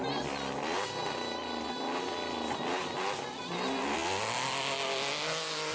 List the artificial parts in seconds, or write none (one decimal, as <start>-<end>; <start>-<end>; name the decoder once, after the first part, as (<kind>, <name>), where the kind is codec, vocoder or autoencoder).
none